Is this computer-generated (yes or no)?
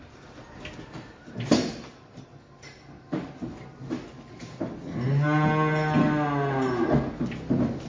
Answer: no